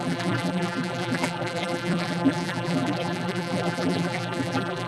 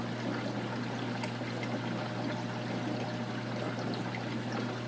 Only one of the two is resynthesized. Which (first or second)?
first